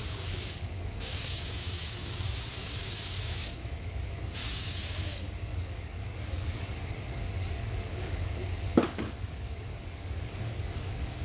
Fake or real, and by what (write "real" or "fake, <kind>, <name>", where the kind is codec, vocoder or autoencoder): fake, codec, DAC